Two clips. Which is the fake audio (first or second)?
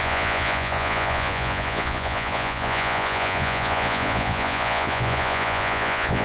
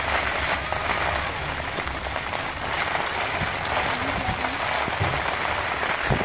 first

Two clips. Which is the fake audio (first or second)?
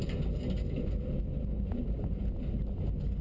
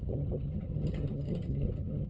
second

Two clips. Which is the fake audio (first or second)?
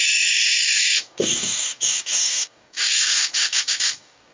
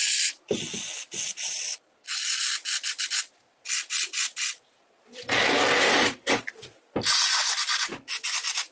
first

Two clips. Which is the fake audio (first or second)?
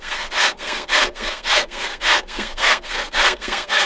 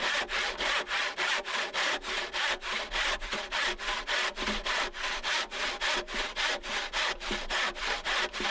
first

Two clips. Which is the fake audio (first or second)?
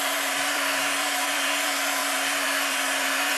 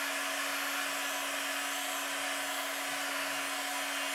first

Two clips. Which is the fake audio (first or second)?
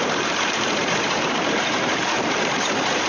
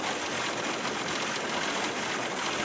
first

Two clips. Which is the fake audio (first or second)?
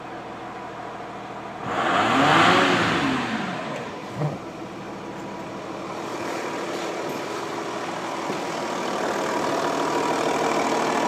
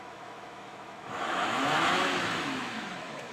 second